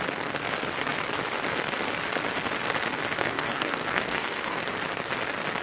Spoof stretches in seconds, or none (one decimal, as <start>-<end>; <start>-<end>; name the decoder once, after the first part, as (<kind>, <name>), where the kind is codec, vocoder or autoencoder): 3.2-4.6 (codec, SNAC)